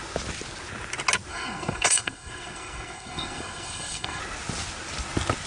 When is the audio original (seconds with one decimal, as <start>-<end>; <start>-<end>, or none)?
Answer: 0.0-1.3; 4.2-5.5